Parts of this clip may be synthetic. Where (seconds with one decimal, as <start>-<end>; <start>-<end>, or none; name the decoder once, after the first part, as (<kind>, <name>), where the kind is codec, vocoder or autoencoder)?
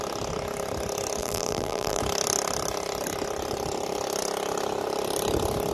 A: 1.2-2.0 (vocoder, BigVGAN v2)